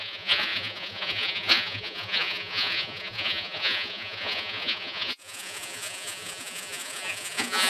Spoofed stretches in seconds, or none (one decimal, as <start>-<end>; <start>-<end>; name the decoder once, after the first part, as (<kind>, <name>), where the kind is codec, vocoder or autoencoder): 0.0-7.7 (vocoder, Vocos)